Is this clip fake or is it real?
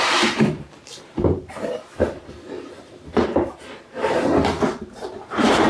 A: fake